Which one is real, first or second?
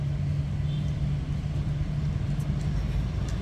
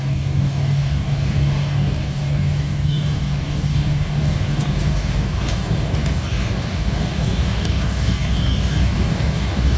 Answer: first